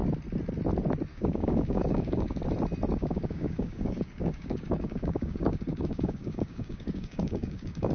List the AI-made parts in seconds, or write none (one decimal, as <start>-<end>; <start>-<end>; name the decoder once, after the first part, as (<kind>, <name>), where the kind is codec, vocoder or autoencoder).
1.1-2.4 (codec, DAC); 2.9-7.9